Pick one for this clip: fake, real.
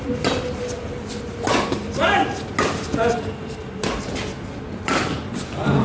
real